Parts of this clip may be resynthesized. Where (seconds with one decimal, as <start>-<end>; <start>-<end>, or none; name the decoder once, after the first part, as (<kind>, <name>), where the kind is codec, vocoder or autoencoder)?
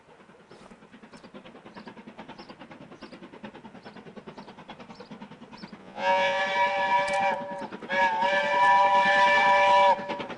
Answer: 5.8-6.4 (vocoder, Vocos)